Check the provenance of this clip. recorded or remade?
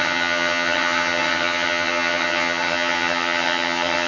remade